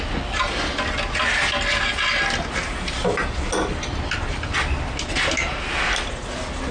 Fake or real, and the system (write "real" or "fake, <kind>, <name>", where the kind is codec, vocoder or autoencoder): real